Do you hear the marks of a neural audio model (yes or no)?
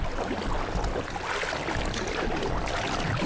no